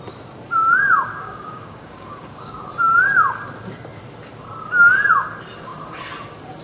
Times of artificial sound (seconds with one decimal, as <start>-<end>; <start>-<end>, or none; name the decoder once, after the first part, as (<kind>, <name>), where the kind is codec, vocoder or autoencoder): 1.1-2.7 (codec, DAC)